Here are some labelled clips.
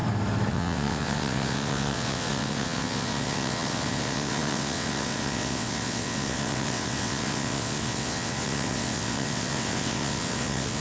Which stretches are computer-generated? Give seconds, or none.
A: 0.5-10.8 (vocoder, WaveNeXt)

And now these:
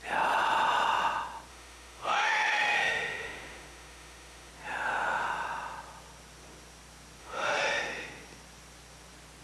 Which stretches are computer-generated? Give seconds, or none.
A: 1.5-4.5 (autoencoder, DAC-VAE); 7.2-7.8

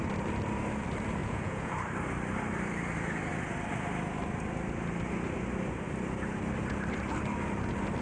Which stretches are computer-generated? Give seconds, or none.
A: 1.2-1.7 (vocoder, Vocos)

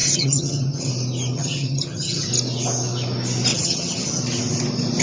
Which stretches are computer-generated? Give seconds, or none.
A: 0.0-0.9 (vocoder, HiFi-GAN); 1.3-2.3; 3.5-4.2